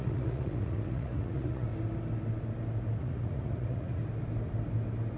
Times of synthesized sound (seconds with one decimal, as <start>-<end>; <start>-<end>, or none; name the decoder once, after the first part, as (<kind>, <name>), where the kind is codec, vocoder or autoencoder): 0.0-1.7 (vocoder, Vocos); 3.0-4.0